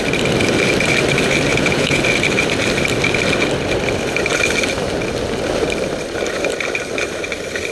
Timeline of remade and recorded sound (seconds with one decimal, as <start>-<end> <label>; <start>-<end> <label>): 0.0-1.5 recorded; 1.5-2.0 remade; 2.0-7.7 recorded